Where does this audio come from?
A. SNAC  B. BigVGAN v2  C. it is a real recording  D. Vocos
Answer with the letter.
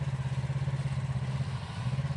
C